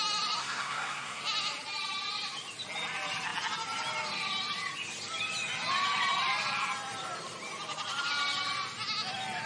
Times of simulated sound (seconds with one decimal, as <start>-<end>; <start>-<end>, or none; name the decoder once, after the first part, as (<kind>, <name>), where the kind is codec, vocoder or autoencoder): 0.4-1.2 (codec, SNAC)